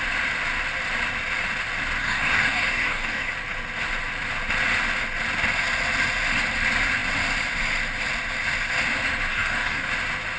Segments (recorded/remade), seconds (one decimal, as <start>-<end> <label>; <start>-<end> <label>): 0.0-2.0 recorded; 2.0-3.3 remade; 3.3-9.3 recorded; 9.3-9.9 remade; 9.9-10.4 recorded